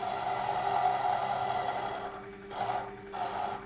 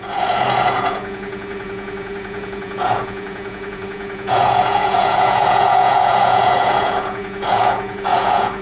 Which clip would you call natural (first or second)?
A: first